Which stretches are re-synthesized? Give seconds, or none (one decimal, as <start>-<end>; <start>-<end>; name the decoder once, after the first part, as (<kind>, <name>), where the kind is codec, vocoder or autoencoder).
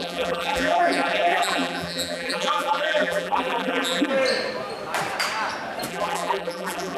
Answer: 0.0-4.1 (vocoder, BigVGAN v2); 5.9-7.0